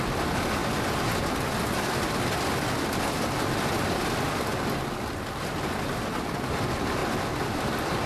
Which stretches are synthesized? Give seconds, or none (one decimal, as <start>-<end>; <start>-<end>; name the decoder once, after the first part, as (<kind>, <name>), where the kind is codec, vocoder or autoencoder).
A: 0.0-0.6 (vocoder, BigVGAN v2); 3.1-4.5; 5.3-7.0; 7.6-8.1